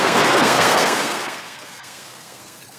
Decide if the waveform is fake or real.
fake